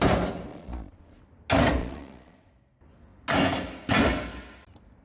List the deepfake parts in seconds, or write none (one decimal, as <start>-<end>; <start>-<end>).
0.5-1.2; 1.8-2.5